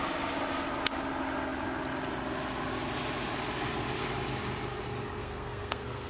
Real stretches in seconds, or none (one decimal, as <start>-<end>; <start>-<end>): 0.0-5.2